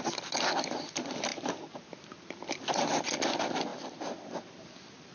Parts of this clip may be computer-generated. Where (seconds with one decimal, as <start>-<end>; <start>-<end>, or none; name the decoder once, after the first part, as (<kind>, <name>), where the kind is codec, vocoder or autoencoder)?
none